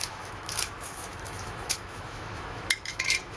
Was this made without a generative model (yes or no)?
no